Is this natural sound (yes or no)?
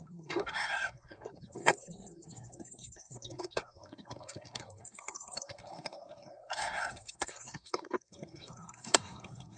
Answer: no